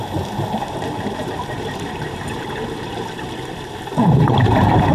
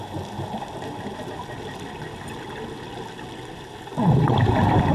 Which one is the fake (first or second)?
first